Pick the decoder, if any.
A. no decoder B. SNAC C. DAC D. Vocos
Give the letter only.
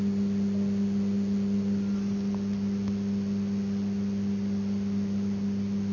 A